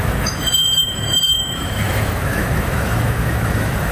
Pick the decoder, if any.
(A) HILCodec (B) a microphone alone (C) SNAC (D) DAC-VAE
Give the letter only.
D